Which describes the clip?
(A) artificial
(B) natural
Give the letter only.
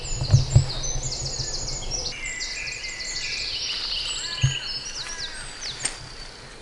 B